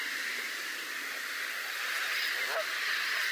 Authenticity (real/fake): real